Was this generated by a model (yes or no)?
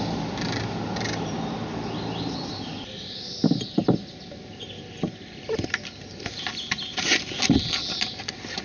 no